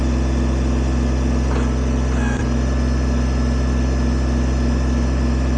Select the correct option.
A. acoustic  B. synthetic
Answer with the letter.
A